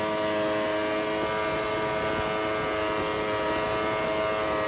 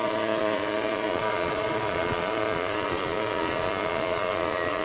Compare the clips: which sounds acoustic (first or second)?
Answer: first